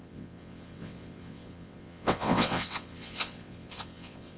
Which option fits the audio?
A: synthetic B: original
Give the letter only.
A